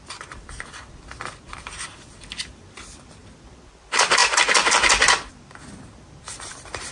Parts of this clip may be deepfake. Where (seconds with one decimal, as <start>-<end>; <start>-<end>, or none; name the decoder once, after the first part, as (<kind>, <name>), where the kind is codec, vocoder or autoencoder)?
0.0-4.2 (vocoder, BigVGAN v2); 5.3-6.9